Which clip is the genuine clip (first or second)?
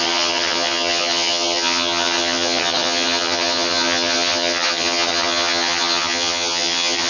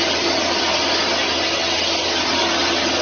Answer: second